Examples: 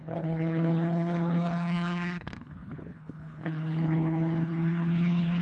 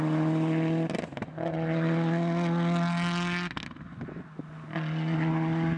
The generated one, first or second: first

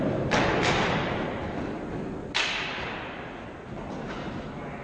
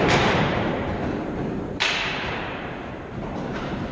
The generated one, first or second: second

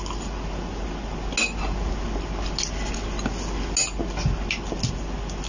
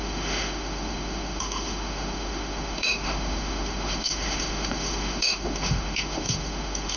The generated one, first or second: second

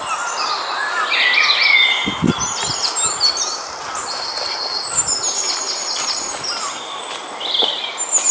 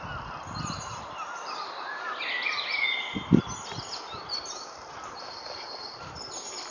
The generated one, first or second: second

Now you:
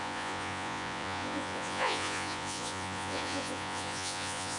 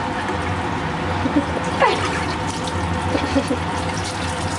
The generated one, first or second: first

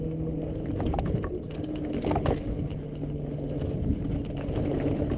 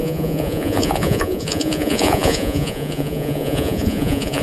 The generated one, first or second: second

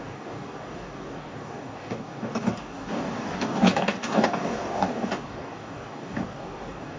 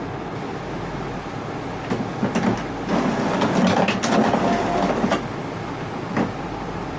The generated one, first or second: first